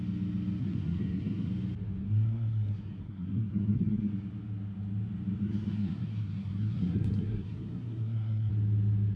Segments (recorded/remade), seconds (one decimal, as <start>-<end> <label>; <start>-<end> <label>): 0.0-0.6 recorded; 0.6-1.5 remade; 1.5-2.0 recorded; 2.0-4.1 remade; 4.1-5.4 recorded; 5.4-8.5 remade; 8.5-9.2 recorded

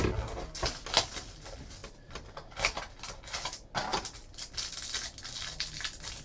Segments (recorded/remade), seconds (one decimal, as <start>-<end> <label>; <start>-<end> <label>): 0.0-6.2 recorded